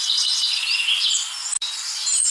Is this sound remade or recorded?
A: recorded